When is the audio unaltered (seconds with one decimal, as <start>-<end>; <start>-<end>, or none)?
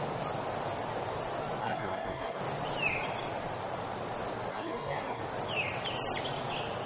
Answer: 0.0-1.6; 2.4-4.5; 5.2-6.9